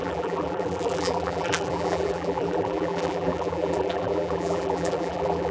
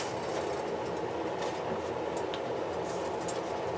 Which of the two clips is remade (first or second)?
first